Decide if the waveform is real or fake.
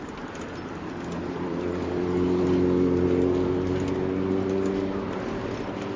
real